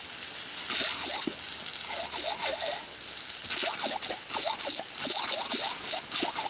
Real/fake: real